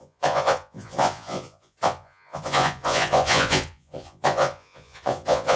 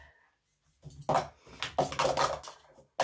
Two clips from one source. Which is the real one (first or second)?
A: second